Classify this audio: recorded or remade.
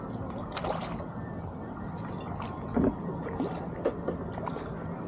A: recorded